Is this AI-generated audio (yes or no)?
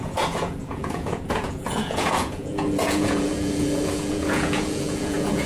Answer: yes